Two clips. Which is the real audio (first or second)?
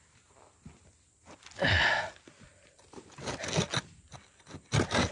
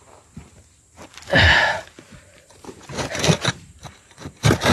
first